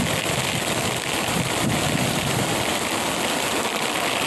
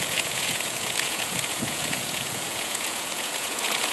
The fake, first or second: second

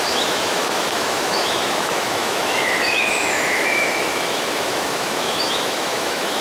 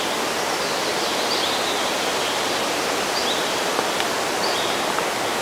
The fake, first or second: first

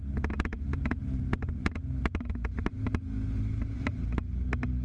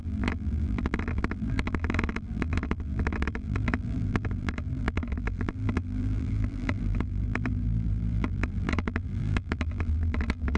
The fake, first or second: second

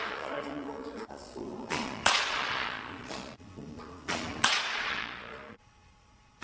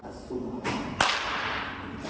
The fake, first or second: first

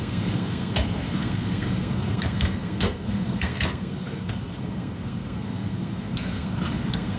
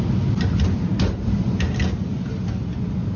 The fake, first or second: first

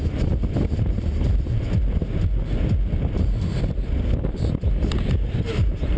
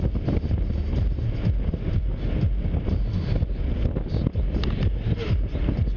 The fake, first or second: first